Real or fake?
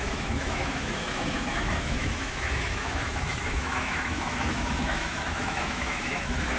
fake